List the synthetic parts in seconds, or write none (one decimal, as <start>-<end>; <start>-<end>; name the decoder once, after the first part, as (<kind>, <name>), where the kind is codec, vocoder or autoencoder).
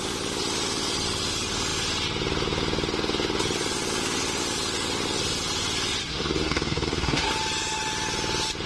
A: 6.0-7.3 (codec, SNAC)